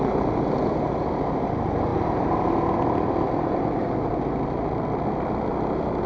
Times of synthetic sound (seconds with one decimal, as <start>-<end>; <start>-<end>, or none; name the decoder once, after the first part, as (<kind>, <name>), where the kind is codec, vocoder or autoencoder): none